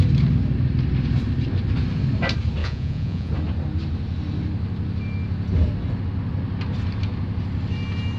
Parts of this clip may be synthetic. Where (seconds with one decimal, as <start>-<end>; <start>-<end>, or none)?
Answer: 2.6-3.3